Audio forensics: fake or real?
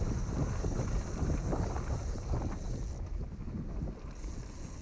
real